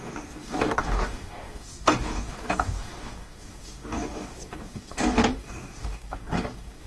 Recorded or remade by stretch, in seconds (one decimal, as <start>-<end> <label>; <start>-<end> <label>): 0.0-6.9 remade